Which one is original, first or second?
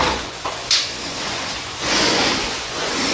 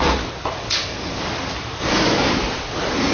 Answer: second